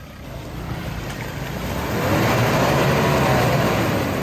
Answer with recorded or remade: remade